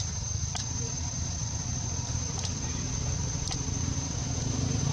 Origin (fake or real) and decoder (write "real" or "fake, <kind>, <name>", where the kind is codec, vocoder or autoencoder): fake, vocoder, BigVGAN v2